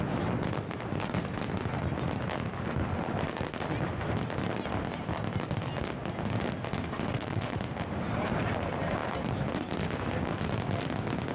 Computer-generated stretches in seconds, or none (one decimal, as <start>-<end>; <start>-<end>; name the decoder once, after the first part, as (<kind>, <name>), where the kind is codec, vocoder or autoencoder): 7.1-7.6 (vocoder, WaveNeXt)